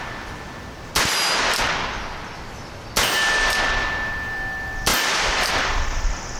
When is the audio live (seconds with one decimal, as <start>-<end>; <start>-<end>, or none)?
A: 0.0-6.4